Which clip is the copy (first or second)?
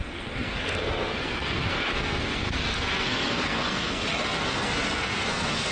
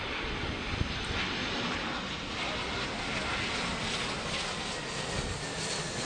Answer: first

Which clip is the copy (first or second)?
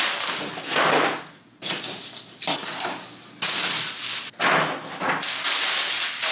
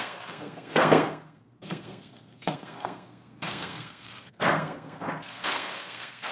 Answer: second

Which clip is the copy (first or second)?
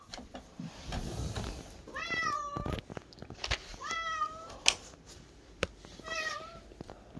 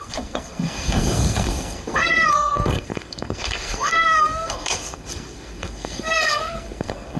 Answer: second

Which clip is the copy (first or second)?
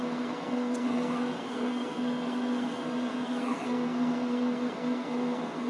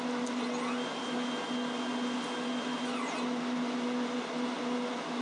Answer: first